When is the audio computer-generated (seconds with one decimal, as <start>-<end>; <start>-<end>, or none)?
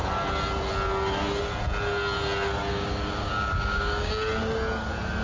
2.7-4.1